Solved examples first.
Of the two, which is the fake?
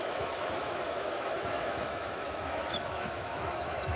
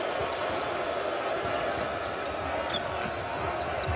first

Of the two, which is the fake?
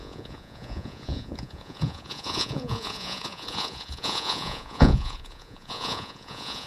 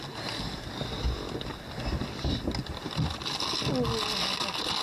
first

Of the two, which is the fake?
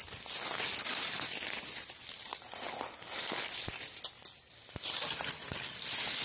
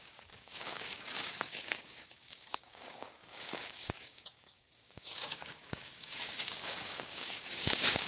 second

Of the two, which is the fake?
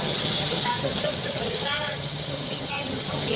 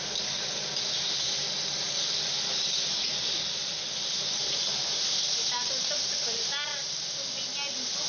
first